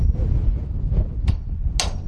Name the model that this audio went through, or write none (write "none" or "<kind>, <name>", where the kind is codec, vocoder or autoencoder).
none